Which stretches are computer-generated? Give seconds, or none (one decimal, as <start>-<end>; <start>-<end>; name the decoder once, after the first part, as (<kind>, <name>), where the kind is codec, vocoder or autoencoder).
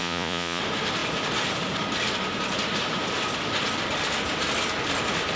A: 0.0-0.6 (vocoder, Vocos)